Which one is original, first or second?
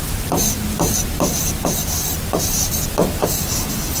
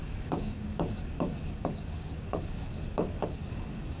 first